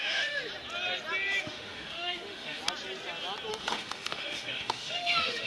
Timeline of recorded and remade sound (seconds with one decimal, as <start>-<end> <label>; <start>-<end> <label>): 0.0-0.4 remade; 0.4-1.4 recorded; 1.4-2.6 remade; 2.6-3.5 recorded; 3.5-5.5 remade